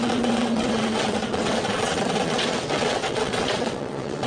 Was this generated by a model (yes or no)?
yes